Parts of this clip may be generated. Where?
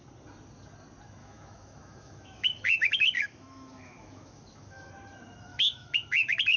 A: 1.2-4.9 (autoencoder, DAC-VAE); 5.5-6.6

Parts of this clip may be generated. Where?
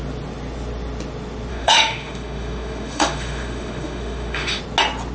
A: 1.5-4.6 (autoencoder, DAC-VAE)